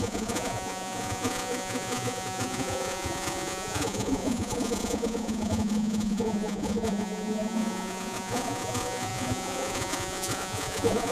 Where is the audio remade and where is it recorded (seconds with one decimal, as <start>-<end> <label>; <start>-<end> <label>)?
0.0-11.1 remade